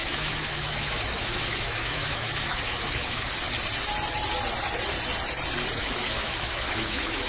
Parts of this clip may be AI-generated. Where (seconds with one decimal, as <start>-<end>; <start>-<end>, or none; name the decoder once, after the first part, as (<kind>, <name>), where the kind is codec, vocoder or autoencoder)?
0.0-3.3 (autoencoder, DAC-VAE); 5.8-7.3